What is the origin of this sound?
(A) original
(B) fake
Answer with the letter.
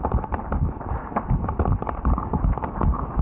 A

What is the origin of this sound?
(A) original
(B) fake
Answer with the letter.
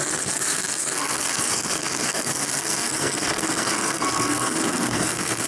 B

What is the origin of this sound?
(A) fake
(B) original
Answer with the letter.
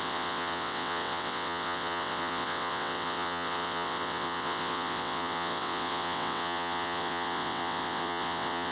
A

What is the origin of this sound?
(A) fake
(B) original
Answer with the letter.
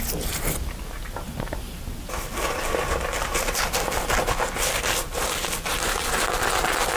B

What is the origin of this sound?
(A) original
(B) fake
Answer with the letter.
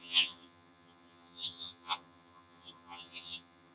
B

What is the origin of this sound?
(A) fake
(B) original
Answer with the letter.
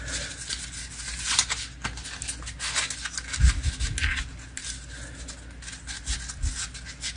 B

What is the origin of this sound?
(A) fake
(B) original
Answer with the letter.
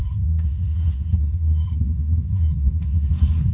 A